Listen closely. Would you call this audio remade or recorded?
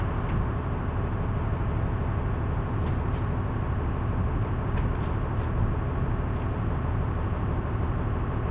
recorded